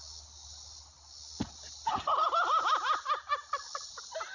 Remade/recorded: recorded